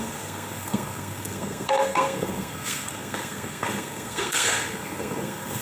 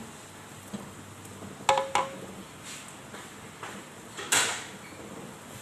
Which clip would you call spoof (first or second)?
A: first